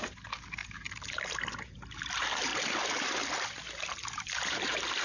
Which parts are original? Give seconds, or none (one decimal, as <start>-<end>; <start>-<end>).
2.5-3.9